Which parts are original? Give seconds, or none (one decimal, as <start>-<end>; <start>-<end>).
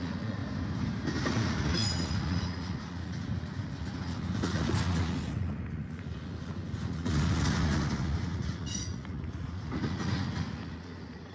0.4-1.3